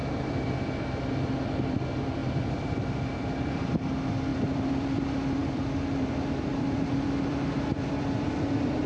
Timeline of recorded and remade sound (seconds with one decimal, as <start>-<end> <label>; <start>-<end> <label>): 0.0-0.5 remade; 0.5-2.2 recorded; 2.2-3.7 remade; 3.7-4.3 recorded; 4.3-8.9 remade